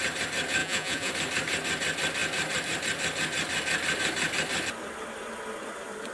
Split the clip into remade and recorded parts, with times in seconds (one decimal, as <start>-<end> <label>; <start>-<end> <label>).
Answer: 0.0-0.6 recorded; 0.6-1.1 remade; 1.1-6.1 recorded